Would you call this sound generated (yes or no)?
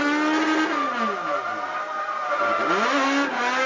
no